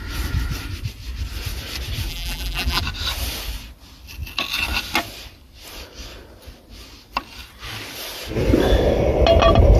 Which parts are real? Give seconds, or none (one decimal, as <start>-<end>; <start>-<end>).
0.0-2.1; 2.8-9.8